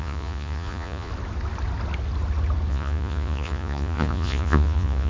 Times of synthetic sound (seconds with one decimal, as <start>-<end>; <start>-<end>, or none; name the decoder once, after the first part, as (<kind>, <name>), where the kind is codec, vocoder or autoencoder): 0.0-1.1 (vocoder, Vocos); 2.7-5.1